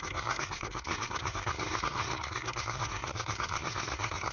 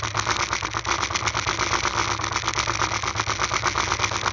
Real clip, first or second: second